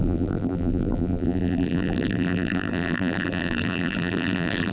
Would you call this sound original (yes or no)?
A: no